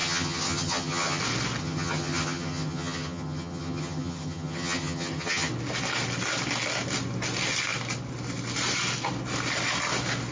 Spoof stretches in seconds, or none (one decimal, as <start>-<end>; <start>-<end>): 0.0-1.2; 1.6-5.5